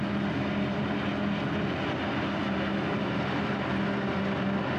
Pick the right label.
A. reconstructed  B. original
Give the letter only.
B